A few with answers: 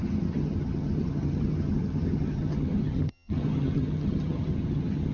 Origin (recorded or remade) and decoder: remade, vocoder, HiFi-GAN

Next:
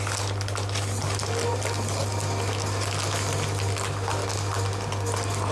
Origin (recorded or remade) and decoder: recorded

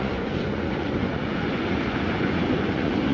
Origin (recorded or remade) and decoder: remade, vocoder, Vocos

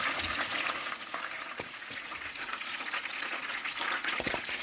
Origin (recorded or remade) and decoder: remade, vocoder, Vocos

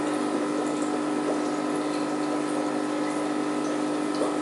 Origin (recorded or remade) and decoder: recorded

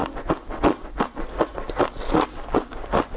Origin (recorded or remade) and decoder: recorded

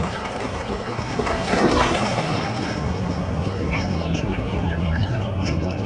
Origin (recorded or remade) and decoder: remade, codec, SNAC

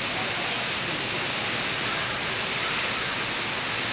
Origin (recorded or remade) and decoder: recorded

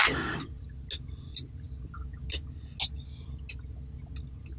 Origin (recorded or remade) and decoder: recorded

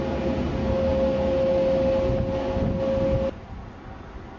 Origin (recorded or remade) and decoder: recorded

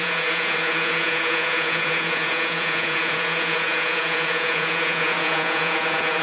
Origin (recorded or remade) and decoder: remade, vocoder, Vocos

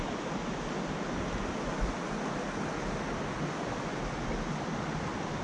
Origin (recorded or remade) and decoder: recorded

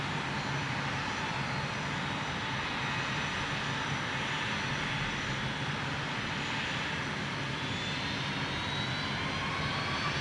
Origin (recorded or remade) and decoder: recorded